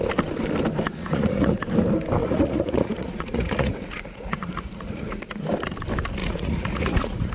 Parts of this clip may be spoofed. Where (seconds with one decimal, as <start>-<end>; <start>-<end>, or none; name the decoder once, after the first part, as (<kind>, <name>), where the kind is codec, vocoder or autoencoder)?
1.0-1.6 (vocoder, Vocos); 2.2-5.2; 6.2-7.3